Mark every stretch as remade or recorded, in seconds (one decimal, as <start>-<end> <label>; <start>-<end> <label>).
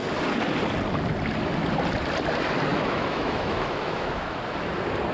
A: 0.0-2.7 recorded; 2.7-4.4 remade; 4.4-5.1 recorded